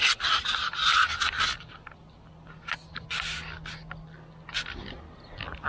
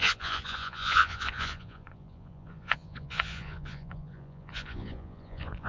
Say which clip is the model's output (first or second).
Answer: second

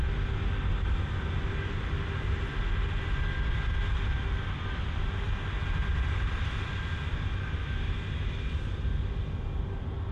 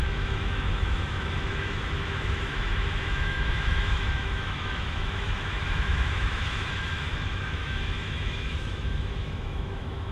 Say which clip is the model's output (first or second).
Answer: second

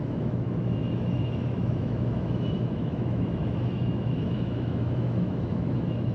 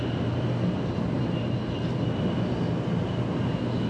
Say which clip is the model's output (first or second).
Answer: first